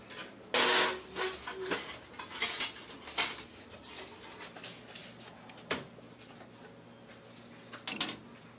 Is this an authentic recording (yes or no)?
yes